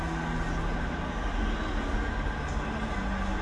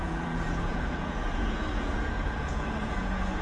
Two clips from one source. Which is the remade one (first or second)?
second